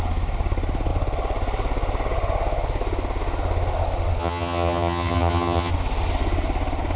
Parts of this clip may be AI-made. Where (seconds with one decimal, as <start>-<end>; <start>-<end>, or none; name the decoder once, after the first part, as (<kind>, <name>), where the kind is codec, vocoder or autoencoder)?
4.2-5.7 (vocoder, HiFi-GAN)